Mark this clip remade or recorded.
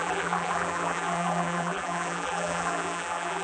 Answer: remade